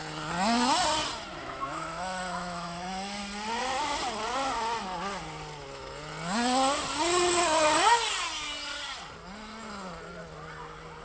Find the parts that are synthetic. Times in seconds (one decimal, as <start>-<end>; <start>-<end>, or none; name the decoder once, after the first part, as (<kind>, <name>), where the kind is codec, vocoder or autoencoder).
1.4-3.2 (autoencoder, DAC-VAE)